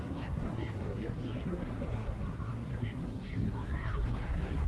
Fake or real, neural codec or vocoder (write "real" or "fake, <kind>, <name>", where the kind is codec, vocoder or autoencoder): fake, codec, SNAC